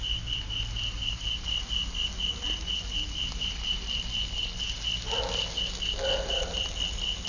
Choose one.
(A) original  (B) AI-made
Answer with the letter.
A